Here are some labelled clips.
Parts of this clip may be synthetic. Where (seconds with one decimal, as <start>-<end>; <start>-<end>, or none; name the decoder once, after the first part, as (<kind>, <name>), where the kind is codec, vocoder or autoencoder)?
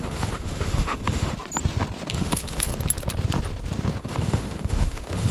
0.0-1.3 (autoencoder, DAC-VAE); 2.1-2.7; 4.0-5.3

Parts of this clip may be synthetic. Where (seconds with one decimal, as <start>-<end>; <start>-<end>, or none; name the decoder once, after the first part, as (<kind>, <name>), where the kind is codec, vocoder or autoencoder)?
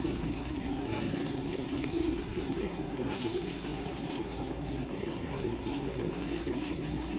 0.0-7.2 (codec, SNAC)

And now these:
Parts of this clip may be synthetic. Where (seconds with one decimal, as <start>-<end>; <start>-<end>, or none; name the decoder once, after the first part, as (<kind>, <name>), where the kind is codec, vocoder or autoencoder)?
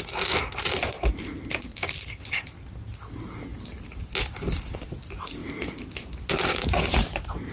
none